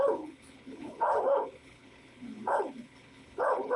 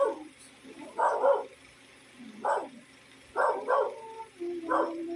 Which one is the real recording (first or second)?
second